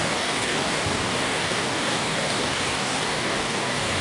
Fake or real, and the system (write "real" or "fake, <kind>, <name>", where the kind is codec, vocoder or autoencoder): fake, codec, DAC